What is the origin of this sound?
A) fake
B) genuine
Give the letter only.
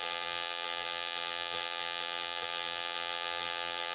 A